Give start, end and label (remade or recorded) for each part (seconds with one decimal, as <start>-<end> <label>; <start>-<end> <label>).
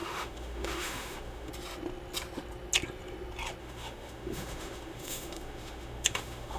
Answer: 0.0-1.5 remade; 1.5-3.6 recorded; 3.6-6.6 remade